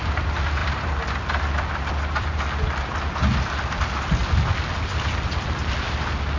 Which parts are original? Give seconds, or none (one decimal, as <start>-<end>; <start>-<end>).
0.0-0.6; 2.3-6.4